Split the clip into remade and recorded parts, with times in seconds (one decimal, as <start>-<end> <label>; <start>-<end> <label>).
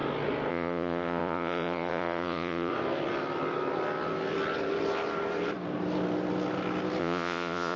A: 0.0-0.5 recorded; 0.5-2.7 remade; 2.7-7.0 recorded; 7.0-7.8 remade